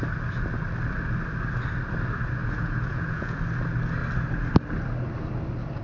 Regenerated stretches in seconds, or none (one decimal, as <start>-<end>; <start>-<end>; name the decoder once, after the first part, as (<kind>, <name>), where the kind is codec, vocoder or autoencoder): 2.4-3.4 (vocoder, Vocos)